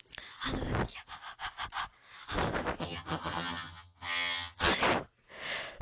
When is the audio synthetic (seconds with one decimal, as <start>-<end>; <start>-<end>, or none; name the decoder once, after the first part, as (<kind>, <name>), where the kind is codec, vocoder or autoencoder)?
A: 2.8-4.7 (vocoder, HiFi-GAN)